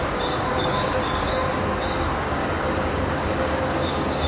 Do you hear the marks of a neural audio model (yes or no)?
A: yes